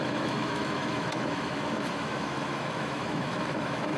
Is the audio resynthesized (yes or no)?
yes